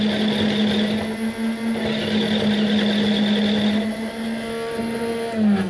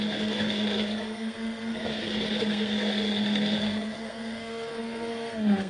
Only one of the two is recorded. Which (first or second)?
first